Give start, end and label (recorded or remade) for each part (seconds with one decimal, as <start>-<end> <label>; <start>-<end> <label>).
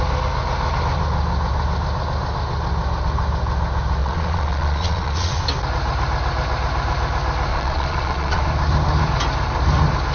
0.0-4.0 recorded; 4.0-5.4 remade; 5.4-7.5 recorded; 7.5-8.4 remade; 8.4-10.1 recorded